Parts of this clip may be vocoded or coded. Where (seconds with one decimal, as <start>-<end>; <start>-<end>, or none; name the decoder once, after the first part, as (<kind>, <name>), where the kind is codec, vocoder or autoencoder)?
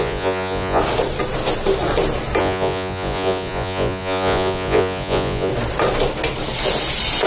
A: 0.0-0.8 (vocoder, Vocos); 2.4-5.5